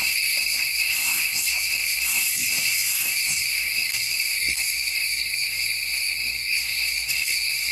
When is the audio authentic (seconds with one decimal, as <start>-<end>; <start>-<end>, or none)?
none